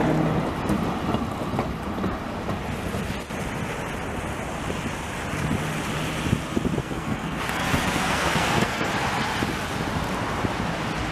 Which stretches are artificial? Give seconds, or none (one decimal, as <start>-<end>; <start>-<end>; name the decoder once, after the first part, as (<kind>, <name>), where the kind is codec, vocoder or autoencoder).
6.8-8.9 (codec, SNAC)